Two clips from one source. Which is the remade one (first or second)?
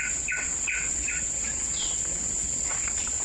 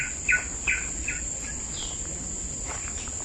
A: first